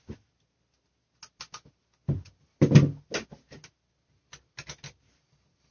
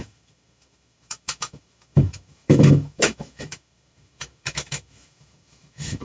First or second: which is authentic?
first